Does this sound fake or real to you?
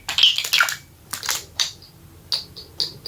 real